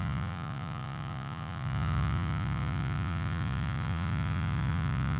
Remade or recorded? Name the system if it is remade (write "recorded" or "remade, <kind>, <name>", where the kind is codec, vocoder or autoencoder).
remade, vocoder, Vocos